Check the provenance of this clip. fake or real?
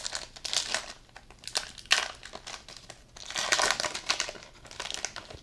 real